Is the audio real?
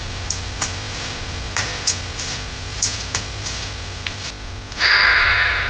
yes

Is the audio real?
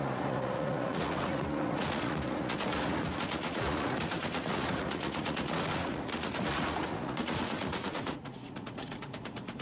no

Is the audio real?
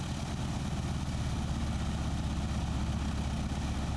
yes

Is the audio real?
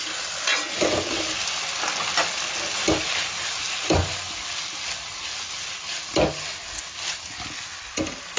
yes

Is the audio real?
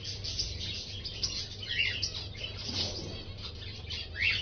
yes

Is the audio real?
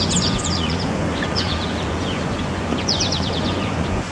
no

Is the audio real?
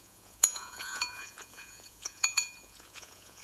no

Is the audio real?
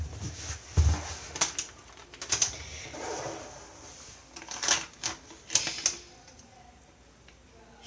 yes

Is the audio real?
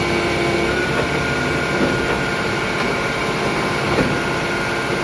yes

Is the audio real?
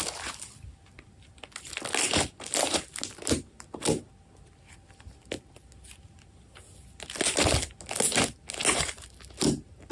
yes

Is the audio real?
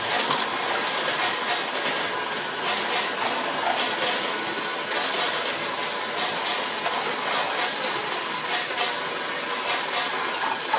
yes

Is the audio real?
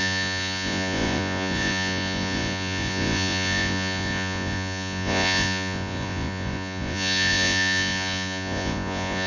no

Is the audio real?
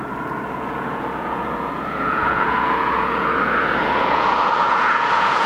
no